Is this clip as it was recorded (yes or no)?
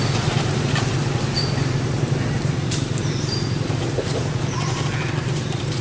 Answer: yes